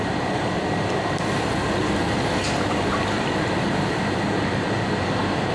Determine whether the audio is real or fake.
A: fake